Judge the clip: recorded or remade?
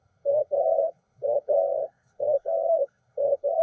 remade